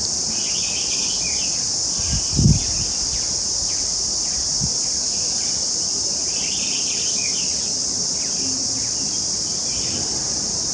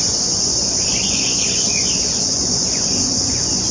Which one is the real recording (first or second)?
first